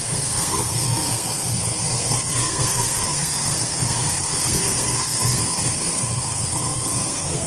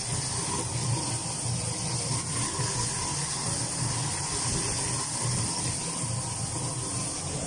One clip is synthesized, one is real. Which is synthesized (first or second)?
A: first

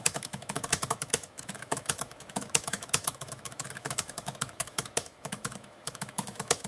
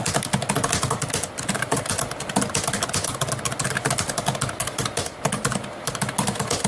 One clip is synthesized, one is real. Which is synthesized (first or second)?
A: first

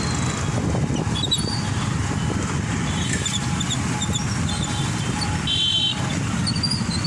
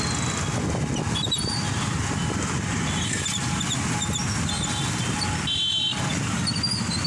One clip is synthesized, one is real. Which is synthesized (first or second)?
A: first